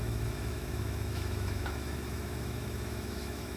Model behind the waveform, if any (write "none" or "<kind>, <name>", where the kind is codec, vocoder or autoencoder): autoencoder, DAC-VAE